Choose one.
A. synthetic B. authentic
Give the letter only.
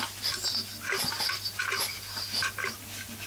B